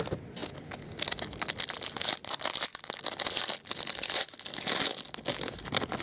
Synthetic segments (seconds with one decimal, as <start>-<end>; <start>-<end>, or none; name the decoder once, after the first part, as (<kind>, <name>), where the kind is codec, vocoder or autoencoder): none